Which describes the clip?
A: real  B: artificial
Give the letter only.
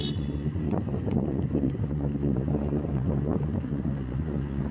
B